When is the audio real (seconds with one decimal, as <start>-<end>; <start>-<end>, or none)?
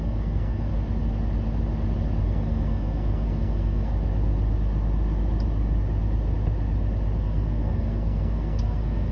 0.7-2.2; 3.9-7.2